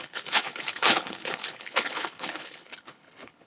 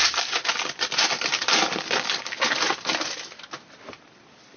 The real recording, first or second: second